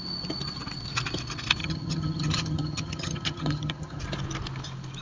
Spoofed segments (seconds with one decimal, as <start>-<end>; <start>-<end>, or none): 1.6-4.0